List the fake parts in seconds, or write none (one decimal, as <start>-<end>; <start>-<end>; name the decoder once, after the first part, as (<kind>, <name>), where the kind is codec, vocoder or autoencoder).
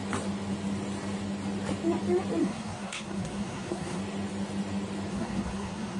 2.4-4.0 (codec, SNAC); 5.1-6.0